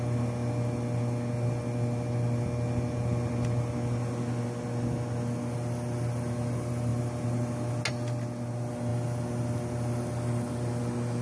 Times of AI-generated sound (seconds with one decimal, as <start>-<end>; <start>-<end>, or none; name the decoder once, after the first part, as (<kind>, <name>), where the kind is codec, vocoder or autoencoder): none